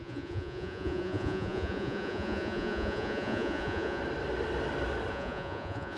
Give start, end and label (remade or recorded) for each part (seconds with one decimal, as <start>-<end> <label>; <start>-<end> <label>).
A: 0.0-4.0 remade; 4.0-5.1 recorded; 5.1-6.0 remade